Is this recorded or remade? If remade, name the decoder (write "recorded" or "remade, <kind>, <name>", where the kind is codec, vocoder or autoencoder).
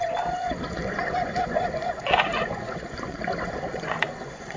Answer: remade, vocoder, Vocos